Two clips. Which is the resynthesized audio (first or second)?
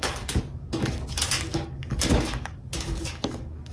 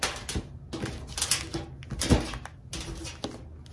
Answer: first